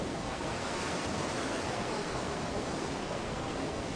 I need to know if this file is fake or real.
fake